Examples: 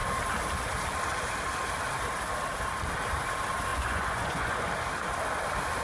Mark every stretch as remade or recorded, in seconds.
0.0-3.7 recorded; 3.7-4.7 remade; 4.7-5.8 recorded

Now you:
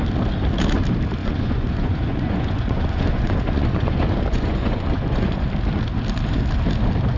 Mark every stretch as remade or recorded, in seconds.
0.0-1.2 recorded; 1.2-5.5 remade; 5.5-7.2 recorded

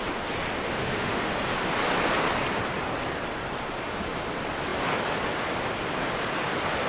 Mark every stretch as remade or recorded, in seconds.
0.0-0.8 recorded; 0.8-1.4 remade; 1.4-6.9 recorded

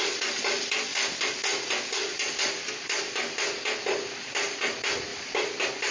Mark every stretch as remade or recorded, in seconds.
0.0-5.9 recorded

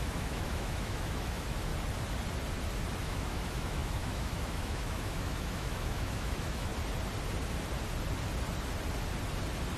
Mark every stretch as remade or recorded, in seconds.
0.0-1.7 remade; 1.7-3.0 recorded; 3.0-6.7 remade; 6.7-9.8 recorded